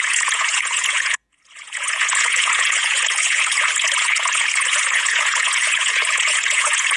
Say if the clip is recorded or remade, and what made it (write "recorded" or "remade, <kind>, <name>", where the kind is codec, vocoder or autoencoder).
remade, vocoder, Vocos